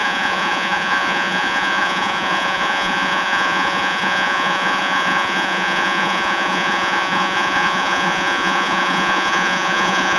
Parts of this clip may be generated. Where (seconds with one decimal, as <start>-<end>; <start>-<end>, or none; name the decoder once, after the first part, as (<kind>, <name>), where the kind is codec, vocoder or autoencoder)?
0.0-10.2 (vocoder, Vocos)